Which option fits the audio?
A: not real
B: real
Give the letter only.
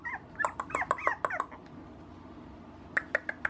B